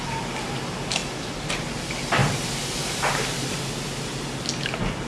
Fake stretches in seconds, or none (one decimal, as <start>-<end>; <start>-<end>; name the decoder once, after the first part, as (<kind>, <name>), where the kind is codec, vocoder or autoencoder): none